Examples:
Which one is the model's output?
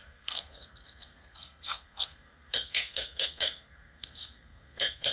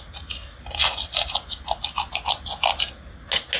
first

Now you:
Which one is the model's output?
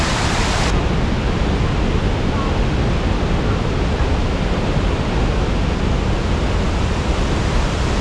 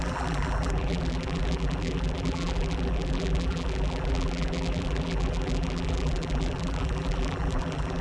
second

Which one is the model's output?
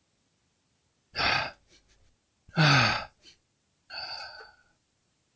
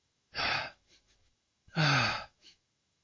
second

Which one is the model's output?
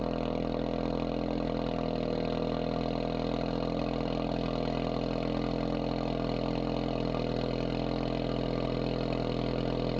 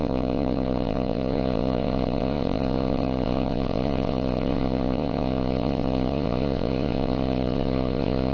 second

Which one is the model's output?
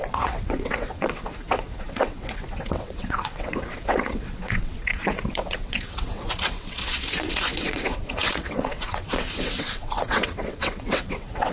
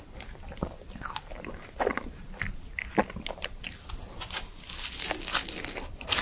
first